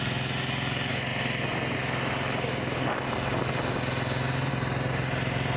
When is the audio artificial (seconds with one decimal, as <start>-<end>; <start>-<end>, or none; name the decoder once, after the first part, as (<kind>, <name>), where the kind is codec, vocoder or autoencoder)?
none